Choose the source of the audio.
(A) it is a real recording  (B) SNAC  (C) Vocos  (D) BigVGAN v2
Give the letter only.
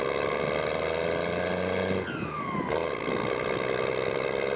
A